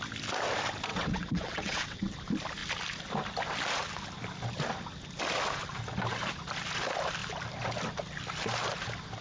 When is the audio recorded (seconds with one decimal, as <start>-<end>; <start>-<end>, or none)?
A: 0.0-0.9; 2.1-9.2